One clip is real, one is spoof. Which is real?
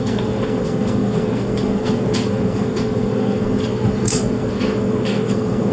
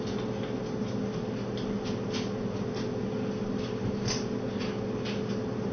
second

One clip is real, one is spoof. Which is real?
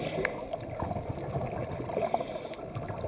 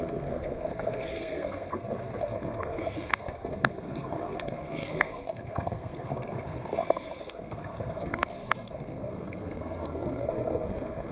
first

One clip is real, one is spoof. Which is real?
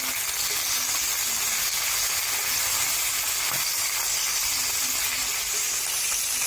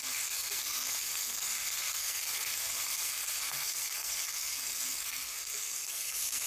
first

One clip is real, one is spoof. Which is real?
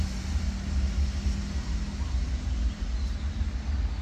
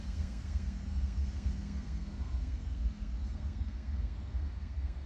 first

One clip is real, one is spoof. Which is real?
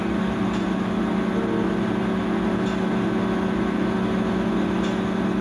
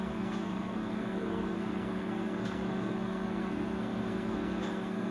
first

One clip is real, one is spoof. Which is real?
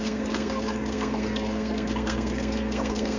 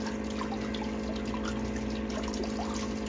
second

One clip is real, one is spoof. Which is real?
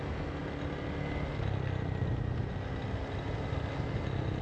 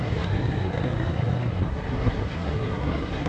first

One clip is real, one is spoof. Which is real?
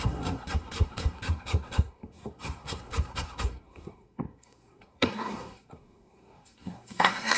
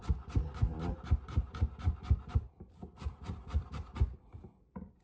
second